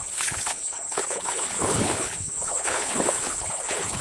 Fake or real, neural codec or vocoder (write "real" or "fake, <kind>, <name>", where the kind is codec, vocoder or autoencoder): fake, codec, HILCodec